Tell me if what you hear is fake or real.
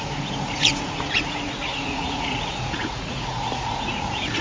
fake